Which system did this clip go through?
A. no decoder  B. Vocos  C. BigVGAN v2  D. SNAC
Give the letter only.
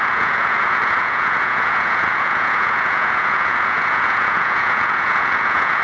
B